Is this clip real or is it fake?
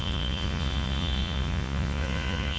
fake